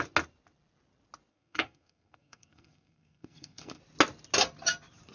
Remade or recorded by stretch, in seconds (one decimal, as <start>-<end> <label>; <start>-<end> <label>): 0.0-1.3 recorded; 1.3-3.8 remade; 3.8-5.1 recorded